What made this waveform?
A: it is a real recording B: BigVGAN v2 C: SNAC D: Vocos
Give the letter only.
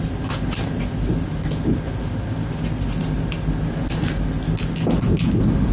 A